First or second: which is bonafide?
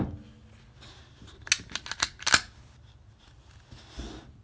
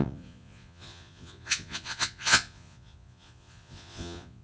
first